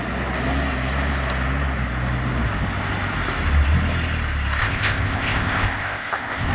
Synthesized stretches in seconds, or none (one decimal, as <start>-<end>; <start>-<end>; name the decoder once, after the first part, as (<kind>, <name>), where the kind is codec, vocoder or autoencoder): 4.6-6.5 (codec, ZipCodec)